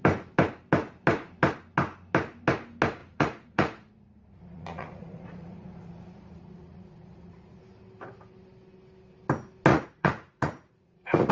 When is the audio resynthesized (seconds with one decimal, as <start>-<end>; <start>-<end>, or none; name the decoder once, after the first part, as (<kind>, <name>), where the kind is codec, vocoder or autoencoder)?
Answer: 3.0-7.6 (vocoder, Vocos); 9.7-11.3